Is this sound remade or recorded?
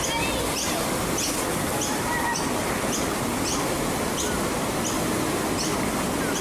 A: recorded